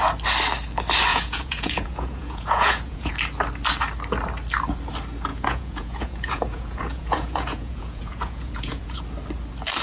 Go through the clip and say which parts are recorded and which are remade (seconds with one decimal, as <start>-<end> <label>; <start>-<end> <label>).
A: 0.0-1.1 recorded; 1.1-3.1 remade; 3.1-5.3 recorded; 5.3-9.0 remade; 9.0-9.8 recorded